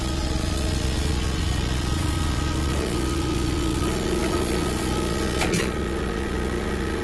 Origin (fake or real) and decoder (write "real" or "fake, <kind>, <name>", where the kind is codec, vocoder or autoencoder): fake, vocoder, Vocos